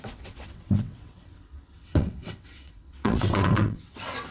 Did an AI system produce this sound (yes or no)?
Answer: yes